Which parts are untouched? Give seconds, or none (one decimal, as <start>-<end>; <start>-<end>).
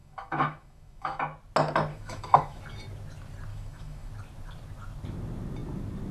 1.2-1.9; 2.6-3.5; 4.1-6.1